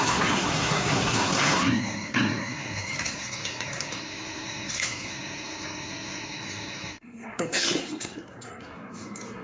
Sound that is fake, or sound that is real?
fake